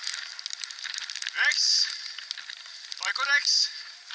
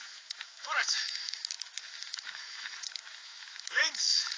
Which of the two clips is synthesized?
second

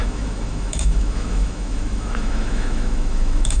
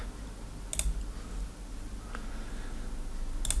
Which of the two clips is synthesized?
first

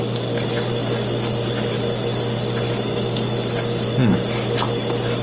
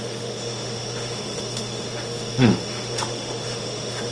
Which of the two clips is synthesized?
second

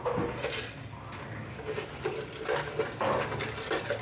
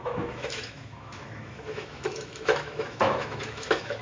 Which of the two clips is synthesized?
second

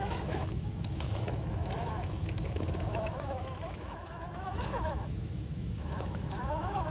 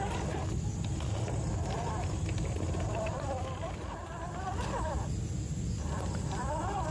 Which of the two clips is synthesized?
first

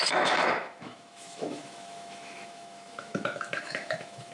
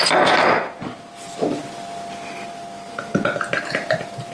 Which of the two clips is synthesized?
first